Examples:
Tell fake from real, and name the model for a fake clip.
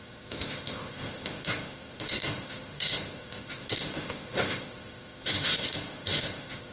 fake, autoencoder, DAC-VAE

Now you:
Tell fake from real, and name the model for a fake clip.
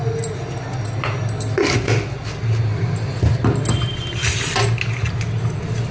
real